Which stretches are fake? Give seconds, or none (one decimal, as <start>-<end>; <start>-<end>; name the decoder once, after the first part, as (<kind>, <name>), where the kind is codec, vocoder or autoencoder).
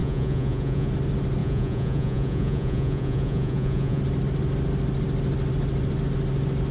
0.0-0.9 (vocoder, Vocos); 1.4-4.0